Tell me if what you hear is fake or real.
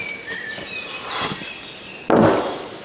real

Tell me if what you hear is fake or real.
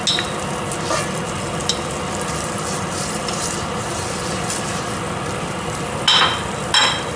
real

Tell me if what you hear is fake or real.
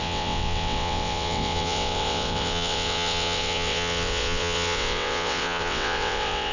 fake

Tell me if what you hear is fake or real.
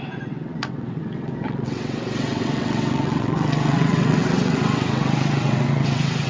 fake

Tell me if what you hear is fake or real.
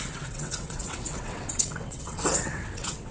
fake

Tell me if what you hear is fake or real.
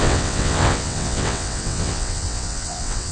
fake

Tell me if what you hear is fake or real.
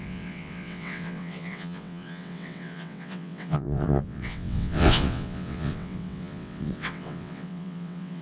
fake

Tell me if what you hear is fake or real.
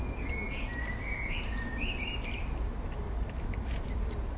real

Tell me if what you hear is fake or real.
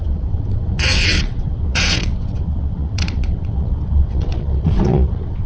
fake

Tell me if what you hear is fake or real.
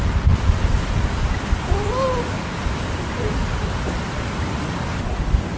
real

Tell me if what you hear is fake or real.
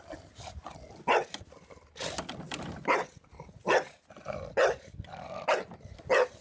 real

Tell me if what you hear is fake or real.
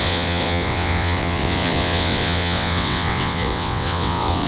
fake